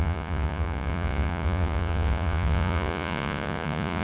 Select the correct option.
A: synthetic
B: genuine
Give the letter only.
A